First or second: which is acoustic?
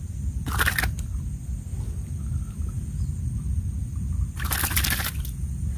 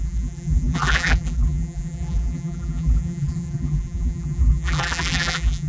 first